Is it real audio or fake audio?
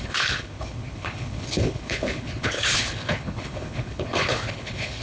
fake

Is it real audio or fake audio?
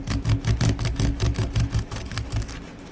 real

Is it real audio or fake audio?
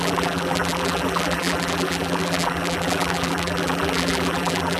fake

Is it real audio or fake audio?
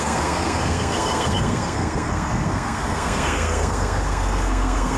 fake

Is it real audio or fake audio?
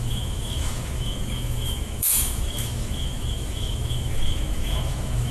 fake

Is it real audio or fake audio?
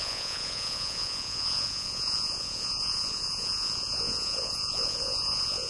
fake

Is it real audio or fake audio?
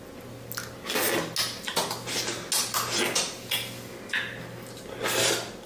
real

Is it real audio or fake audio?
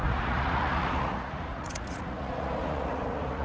fake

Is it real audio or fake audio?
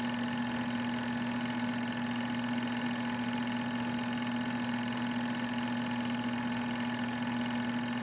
real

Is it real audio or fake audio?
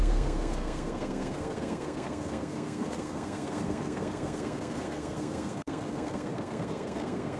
fake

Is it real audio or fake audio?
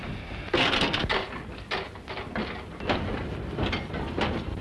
real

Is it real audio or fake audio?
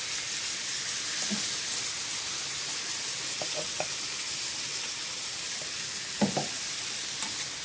real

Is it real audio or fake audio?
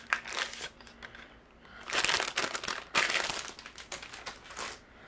real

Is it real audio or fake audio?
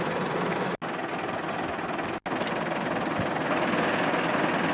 real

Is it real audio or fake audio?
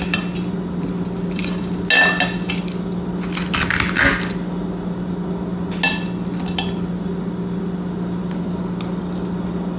real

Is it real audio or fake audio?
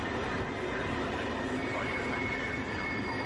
real